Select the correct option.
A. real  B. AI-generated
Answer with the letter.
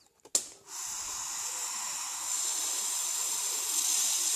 A